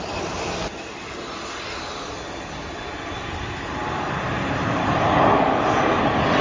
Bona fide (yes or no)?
yes